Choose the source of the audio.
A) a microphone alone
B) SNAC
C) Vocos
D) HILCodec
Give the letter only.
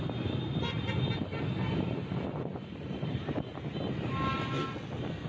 A